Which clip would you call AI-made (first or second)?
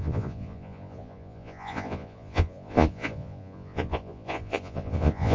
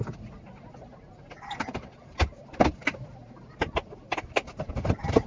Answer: first